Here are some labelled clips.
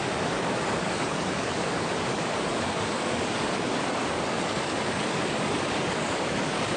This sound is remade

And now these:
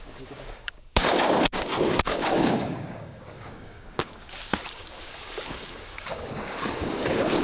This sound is remade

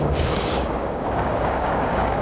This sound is remade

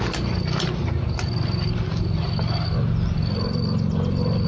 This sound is recorded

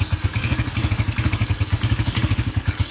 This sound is remade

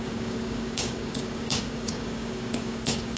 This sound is remade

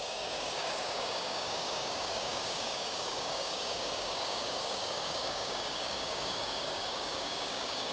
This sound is remade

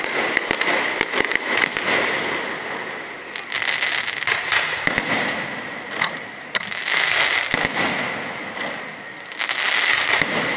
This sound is recorded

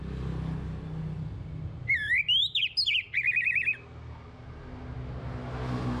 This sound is recorded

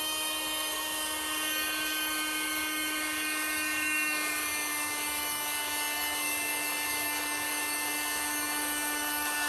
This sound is remade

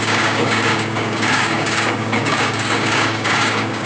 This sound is remade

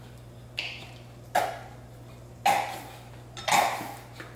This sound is recorded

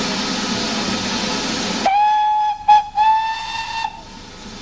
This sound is recorded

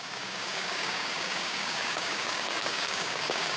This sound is remade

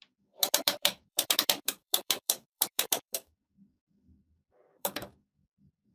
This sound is remade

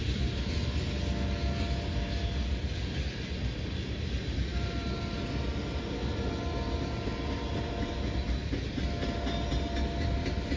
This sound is recorded